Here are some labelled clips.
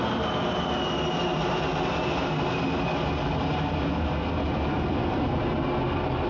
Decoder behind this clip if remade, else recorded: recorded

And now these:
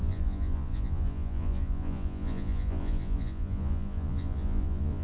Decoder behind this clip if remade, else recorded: remade, vocoder, Vocos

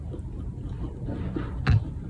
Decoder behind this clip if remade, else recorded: recorded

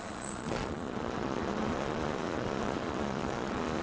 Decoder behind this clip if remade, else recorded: remade, vocoder, Vocos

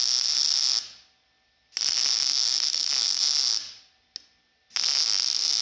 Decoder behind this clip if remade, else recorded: recorded